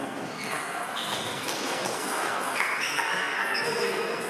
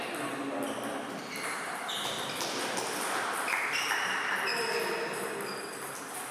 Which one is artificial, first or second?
first